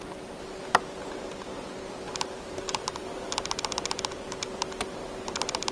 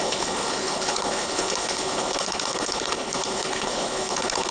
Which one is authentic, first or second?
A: first